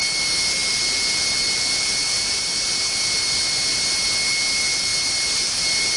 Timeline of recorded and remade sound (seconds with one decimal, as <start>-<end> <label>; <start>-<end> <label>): 0.0-6.0 recorded